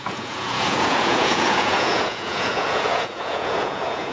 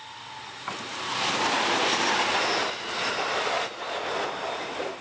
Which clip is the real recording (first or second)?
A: second